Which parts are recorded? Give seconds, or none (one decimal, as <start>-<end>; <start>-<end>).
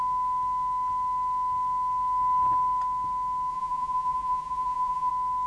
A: 0.0-3.5; 5.1-5.5